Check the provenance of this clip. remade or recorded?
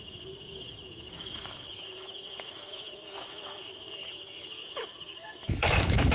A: remade